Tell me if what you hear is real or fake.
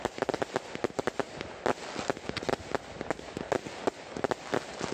real